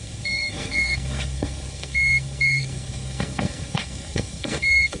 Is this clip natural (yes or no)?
no